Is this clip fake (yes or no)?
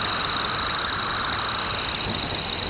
no